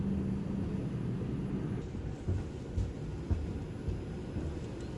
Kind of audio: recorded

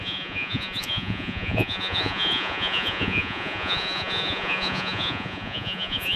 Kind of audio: remade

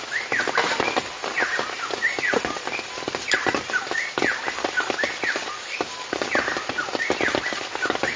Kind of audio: recorded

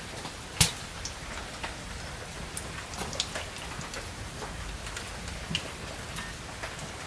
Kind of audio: recorded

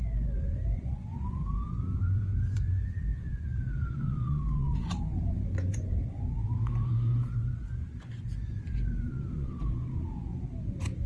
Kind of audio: remade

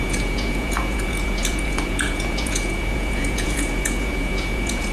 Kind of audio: remade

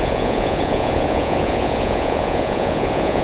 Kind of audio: remade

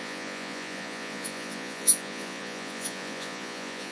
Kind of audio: remade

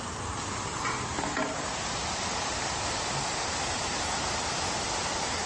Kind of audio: recorded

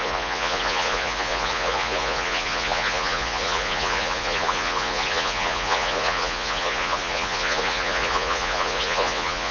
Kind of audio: remade